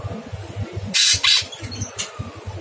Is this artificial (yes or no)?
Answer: no